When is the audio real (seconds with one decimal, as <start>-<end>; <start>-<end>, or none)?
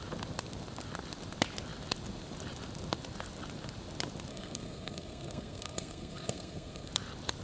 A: 0.0-4.3; 6.9-7.4